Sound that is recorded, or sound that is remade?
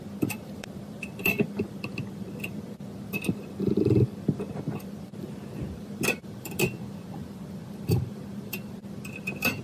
remade